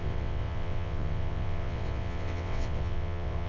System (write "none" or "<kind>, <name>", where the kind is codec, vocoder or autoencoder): vocoder, WaveNeXt